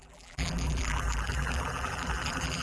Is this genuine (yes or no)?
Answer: no